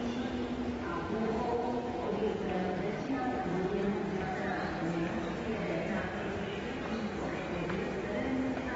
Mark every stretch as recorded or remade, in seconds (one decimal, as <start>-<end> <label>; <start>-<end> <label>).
0.0-0.9 recorded; 0.9-3.0 remade; 3.0-8.8 recorded